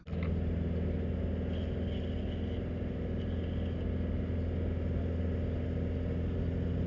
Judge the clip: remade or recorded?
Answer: recorded